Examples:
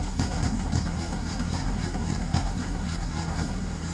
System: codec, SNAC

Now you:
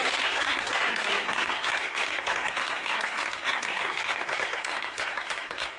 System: codec, SNAC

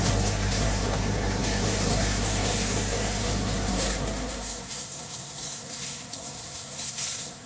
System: codec, SNAC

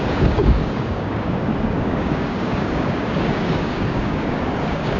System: codec, DAC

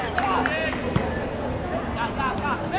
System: none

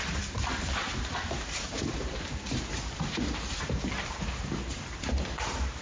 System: vocoder, BigVGAN v2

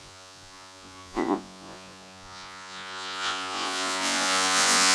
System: vocoder, Vocos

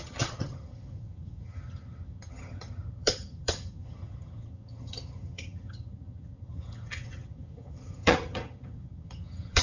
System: vocoder, HiFi-GAN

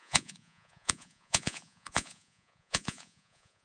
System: vocoder, Vocos